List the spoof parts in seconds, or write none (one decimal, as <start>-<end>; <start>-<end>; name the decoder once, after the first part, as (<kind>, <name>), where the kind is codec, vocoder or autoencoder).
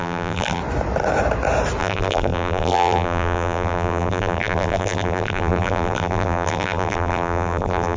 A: 0.0-0.6 (vocoder, BigVGAN v2); 1.8-8.0